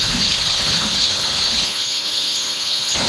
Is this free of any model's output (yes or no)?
no